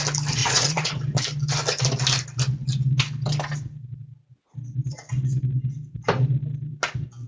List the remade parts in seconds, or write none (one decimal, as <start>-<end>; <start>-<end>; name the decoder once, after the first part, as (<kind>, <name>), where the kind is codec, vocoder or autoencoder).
0.4-0.9 (vocoder, Vocos)